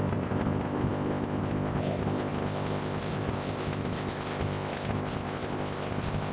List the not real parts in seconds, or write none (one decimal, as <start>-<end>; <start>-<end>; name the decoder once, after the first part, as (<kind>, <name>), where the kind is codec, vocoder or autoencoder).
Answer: 0.0-6.3 (codec, ZipCodec)